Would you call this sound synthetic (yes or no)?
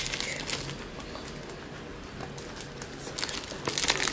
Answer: no